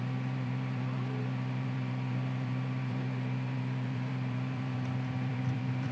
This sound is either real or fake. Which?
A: fake